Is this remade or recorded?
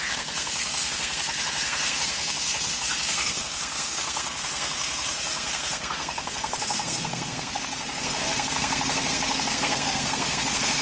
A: remade